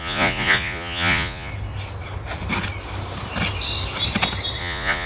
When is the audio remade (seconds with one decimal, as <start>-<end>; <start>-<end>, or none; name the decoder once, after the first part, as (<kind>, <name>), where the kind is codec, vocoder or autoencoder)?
0.0-1.5 (vocoder, Vocos); 4.6-5.1